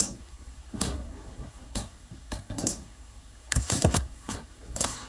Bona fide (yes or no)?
no